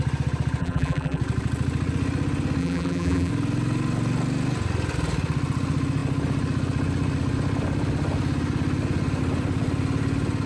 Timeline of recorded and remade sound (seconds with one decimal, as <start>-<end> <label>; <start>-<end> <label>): 0.0-0.6 recorded; 0.6-1.2 remade; 1.2-2.6 recorded; 2.6-3.3 remade; 3.3-10.5 recorded